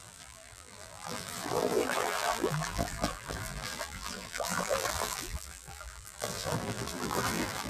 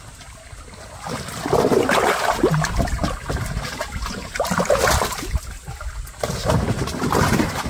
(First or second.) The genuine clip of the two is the second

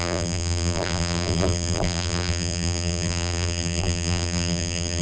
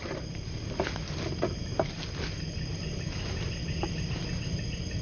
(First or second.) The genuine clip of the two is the second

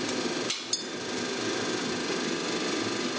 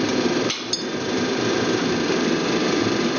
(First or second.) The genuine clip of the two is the first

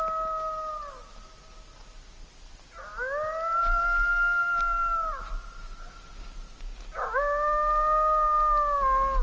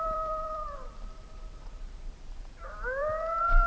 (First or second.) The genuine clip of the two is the first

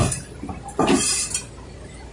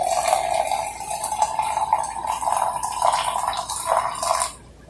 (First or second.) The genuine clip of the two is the second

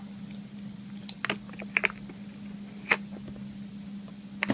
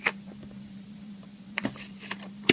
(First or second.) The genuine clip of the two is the first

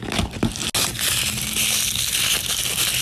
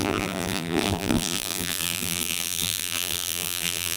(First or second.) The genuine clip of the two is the first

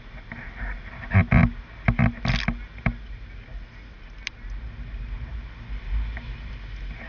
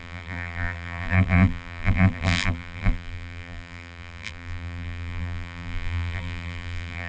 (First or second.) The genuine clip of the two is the first